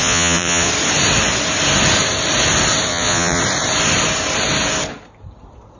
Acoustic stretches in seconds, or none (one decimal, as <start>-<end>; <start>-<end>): 0.7-2.9; 3.4-5.8